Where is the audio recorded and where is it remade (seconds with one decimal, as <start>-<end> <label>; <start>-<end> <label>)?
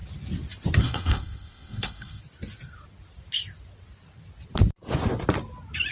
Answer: 0.0-0.8 recorded; 0.8-2.2 remade; 2.2-5.9 recorded